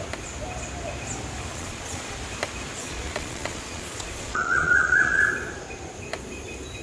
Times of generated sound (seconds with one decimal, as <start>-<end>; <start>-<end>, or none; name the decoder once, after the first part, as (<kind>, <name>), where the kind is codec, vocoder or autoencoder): 1.5-2.2 (vocoder, Vocos); 2.8-5.2